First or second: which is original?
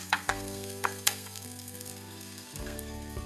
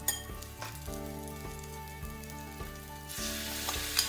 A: second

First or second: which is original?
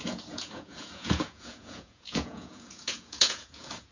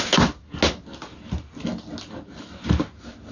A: second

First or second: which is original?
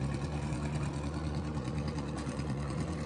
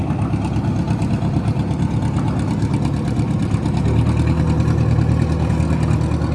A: second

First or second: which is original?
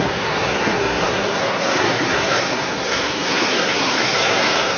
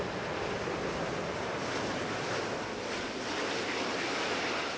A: second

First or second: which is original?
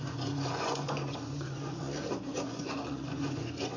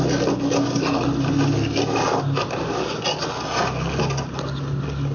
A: second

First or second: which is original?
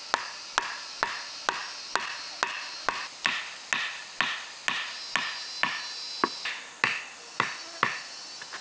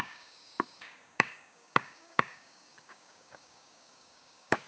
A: first